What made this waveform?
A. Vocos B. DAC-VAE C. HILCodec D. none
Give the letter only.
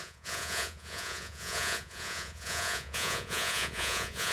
A